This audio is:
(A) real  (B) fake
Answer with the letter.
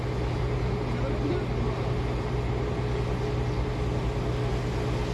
A